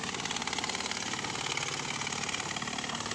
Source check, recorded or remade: recorded